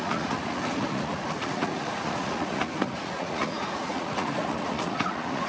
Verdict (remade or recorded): remade